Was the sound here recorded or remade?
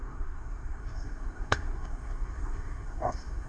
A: remade